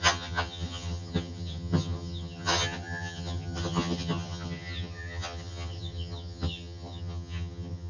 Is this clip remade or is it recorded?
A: remade